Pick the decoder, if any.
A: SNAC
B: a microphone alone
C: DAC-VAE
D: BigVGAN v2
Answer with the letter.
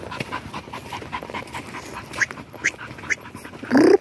B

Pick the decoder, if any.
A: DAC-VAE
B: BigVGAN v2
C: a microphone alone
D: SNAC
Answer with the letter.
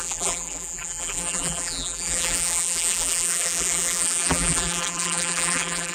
B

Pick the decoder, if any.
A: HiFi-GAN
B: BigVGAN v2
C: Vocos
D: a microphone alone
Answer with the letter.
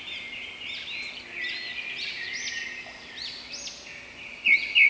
D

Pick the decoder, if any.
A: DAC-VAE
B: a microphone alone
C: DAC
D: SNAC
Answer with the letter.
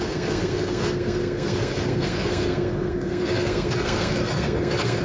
D